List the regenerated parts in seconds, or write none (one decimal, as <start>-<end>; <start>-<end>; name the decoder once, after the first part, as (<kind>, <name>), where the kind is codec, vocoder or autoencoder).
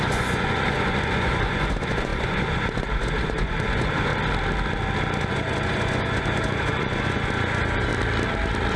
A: 0.0-4.1 (vocoder, Vocos); 5.2-7.9